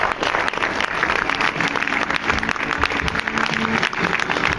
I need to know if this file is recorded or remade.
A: recorded